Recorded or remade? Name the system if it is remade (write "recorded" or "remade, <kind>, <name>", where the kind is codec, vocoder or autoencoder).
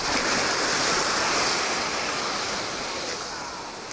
recorded